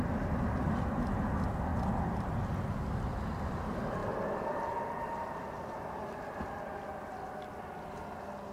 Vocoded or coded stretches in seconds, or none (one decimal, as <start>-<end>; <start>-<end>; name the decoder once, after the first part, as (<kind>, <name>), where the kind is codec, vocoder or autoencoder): none